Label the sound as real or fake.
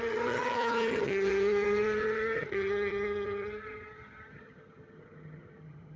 fake